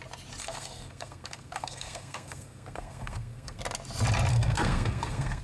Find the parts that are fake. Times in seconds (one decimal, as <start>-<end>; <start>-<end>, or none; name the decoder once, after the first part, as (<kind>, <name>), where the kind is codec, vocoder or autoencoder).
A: 0.4-3.6 (codec, SNAC); 4.3-5.4